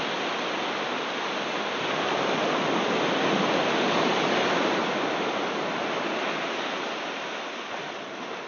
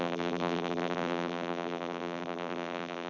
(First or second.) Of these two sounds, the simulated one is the second